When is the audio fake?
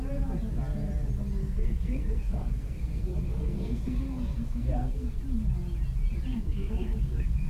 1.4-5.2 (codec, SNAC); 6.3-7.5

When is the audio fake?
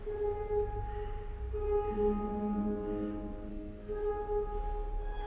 3.5-4.1 (codec, SNAC)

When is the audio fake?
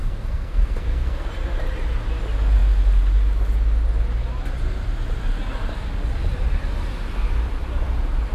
0.0-1.3 (codec, SNAC)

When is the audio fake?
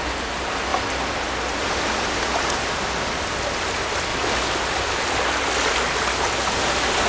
none